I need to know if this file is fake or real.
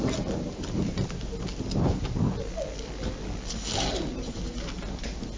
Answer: real